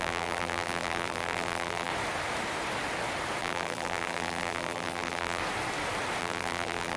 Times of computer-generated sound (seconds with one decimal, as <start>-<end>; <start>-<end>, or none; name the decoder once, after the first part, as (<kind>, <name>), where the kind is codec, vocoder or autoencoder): 0.0-1.9 (vocoder, BigVGAN v2); 3.4-5.4; 6.2-7.0